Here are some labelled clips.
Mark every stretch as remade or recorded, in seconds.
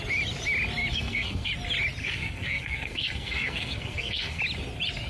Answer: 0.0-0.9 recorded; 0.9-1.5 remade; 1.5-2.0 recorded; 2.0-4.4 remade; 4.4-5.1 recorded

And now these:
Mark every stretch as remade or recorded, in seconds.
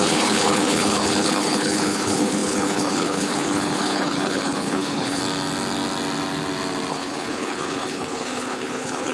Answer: 0.0-5.2 remade; 5.2-6.9 recorded; 6.9-9.1 remade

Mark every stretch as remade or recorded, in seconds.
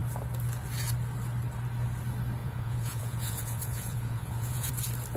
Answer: 0.0-2.4 recorded; 2.4-4.7 remade; 4.7-5.2 recorded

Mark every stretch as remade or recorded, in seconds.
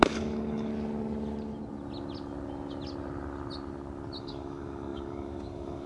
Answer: 0.0-0.7 remade; 0.7-4.2 recorded; 4.2-5.9 remade